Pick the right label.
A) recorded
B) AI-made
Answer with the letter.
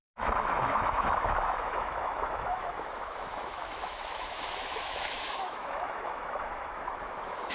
B